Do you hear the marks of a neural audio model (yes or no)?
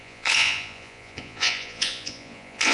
yes